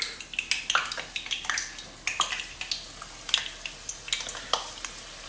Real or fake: real